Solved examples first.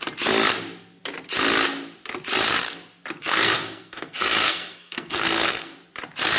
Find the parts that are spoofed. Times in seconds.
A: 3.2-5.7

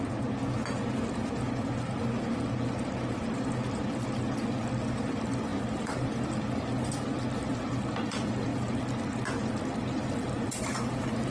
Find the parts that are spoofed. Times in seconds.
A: none

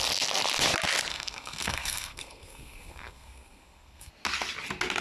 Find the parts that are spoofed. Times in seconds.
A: 1.1-4.1

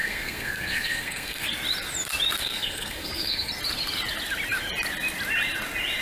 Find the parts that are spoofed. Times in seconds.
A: 0.0-1.5; 2.4-3.5

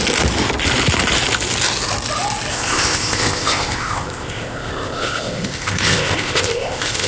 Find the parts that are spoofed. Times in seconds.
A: 2.5-7.1

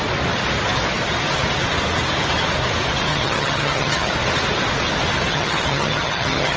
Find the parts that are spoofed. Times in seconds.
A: 3.1-4.1; 5.3-6.6

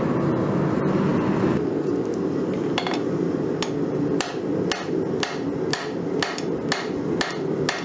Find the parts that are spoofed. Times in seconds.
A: none

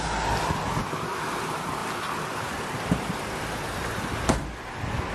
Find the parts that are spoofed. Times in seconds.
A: none